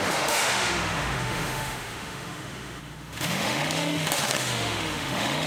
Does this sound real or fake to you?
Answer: fake